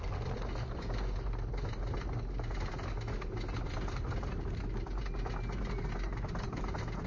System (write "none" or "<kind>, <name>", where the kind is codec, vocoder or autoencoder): none